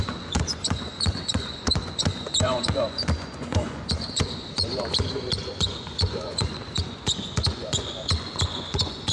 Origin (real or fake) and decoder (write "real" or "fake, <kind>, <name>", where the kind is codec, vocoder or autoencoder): fake, vocoder, Vocos